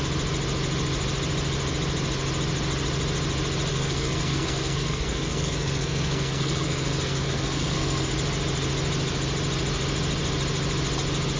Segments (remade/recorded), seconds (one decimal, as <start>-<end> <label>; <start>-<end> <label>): 0.0-3.7 recorded; 3.7-8.1 remade; 8.1-11.4 recorded

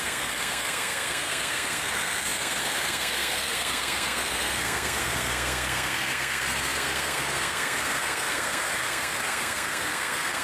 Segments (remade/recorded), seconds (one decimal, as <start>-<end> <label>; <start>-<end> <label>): 0.0-10.4 remade

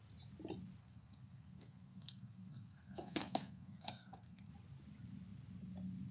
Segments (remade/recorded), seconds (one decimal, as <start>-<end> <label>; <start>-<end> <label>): 0.0-0.8 recorded; 0.8-4.5 remade; 4.5-6.1 recorded

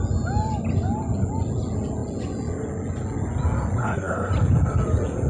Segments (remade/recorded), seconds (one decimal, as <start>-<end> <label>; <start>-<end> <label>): 0.0-3.8 recorded; 3.8-4.3 remade; 4.3-5.3 recorded